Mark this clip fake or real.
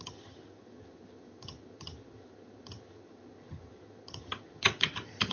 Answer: fake